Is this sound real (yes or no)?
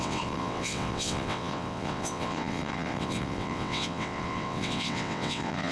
no